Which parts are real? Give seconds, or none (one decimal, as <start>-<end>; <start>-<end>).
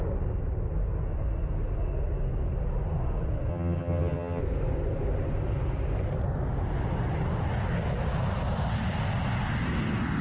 0.0-3.5; 4.4-10.2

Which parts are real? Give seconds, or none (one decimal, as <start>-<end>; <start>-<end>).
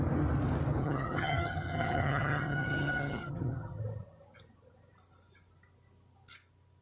0.0-0.8; 3.8-6.8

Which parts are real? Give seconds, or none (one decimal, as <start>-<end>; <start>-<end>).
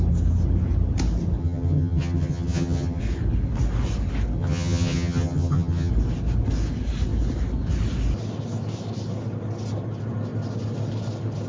0.0-1.4; 3.0-4.4; 5.9-11.5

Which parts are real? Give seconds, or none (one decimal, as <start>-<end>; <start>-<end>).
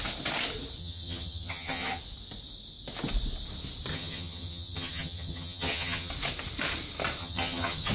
0.0-0.8; 2.0-3.9; 6.1-7.2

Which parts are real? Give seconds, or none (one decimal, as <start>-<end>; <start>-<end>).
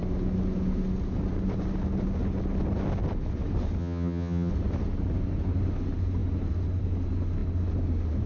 0.0-3.8; 4.5-8.3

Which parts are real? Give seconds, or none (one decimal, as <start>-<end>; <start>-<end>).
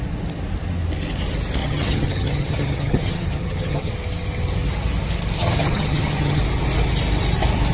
0.0-1.6; 3.9-5.4; 6.4-7.7